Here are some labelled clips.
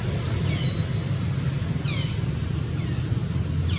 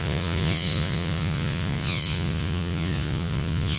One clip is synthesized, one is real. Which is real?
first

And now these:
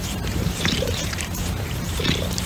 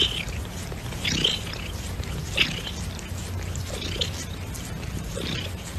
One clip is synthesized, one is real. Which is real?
second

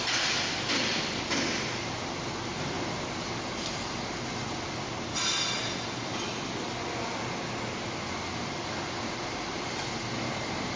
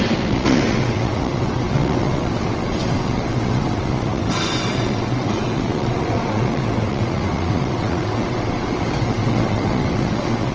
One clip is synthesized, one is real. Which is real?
first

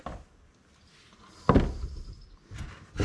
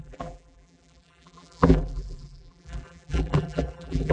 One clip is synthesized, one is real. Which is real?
first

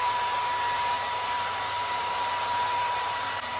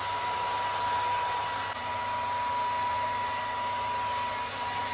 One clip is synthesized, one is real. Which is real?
second